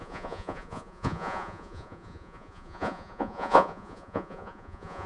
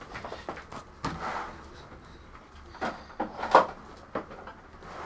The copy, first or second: first